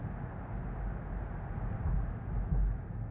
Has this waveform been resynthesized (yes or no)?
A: no